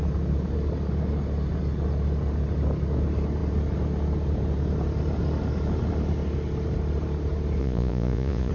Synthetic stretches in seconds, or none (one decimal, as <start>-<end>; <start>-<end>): 7.6-8.5